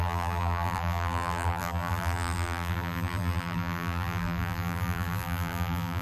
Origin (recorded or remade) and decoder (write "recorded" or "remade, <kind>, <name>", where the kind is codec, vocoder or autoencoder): remade, vocoder, BigVGAN v2